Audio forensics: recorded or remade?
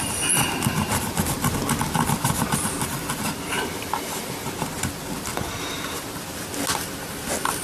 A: recorded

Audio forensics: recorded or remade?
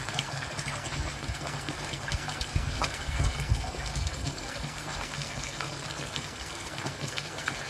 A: remade